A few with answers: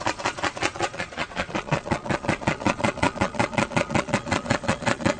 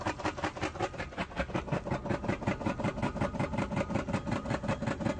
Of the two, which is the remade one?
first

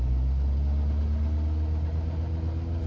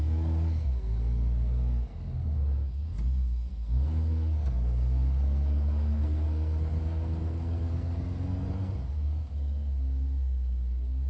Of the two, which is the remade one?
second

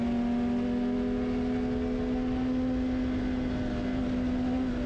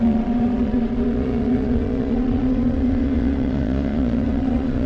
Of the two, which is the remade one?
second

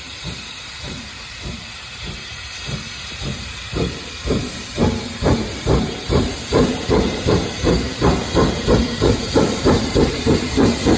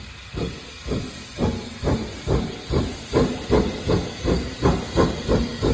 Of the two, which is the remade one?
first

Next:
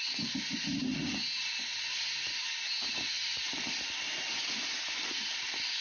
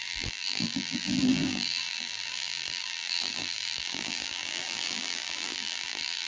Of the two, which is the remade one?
second